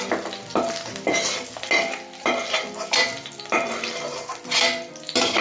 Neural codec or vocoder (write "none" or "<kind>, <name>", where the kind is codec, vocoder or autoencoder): none